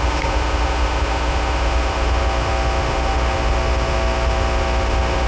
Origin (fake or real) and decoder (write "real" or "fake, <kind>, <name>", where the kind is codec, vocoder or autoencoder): fake, autoencoder, DAC-VAE